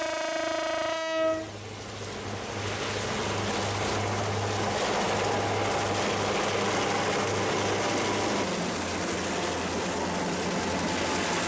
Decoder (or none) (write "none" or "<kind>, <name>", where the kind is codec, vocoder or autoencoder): none